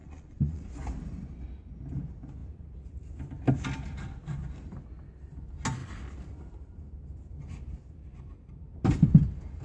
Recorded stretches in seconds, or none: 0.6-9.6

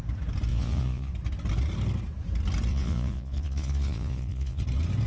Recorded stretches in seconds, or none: 0.0-0.5; 1.1-2.7; 4.6-5.1

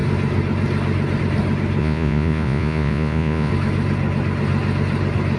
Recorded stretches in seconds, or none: 0.0-1.8; 3.5-5.4

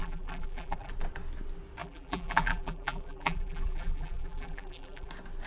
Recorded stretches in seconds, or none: 0.9-1.8; 5.1-5.5

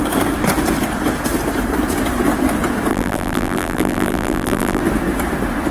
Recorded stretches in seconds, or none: 0.0-2.9; 4.8-5.7

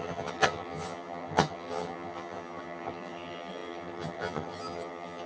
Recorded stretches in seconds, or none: none